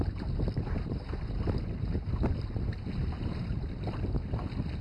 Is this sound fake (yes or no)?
no